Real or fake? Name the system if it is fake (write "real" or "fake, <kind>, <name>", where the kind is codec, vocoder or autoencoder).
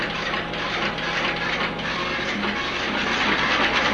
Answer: real